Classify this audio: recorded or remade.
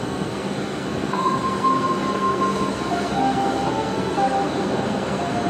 remade